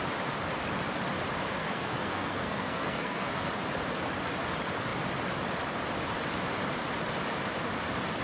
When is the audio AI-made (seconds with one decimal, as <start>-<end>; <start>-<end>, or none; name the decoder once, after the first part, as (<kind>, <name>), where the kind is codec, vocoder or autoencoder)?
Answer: 1.6-3.5 (codec, SNAC)